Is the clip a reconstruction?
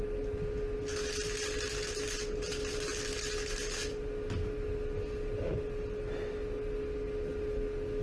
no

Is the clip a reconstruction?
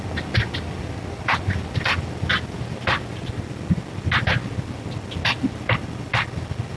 no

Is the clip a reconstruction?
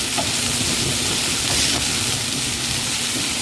no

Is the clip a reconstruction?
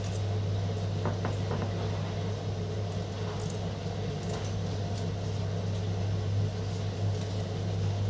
no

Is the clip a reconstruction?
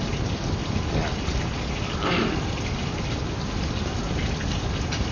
no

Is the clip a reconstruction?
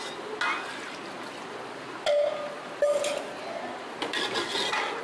no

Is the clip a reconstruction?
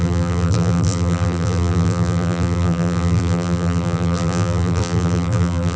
yes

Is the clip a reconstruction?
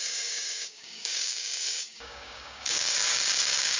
yes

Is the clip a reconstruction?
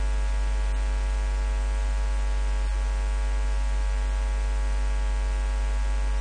no